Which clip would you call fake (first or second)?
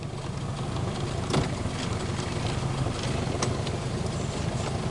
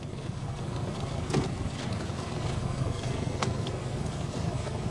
second